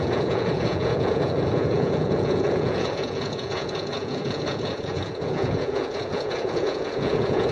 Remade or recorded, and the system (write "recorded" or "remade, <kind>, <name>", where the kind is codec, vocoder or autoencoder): remade, vocoder, Vocos